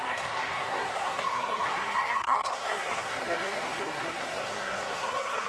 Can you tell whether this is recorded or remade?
remade